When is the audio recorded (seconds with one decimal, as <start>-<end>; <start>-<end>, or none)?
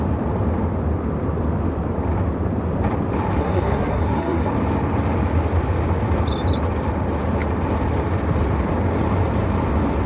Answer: 0.0-3.4; 4.5-10.1